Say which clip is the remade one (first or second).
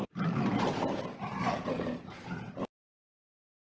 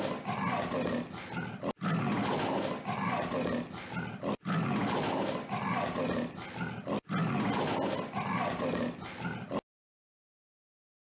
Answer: first